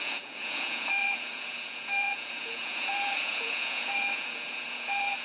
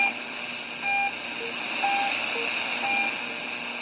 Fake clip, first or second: first